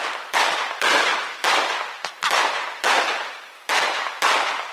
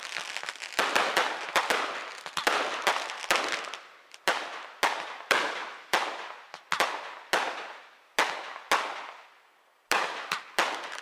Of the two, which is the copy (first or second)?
first